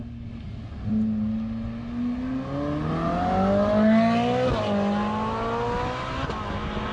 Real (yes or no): yes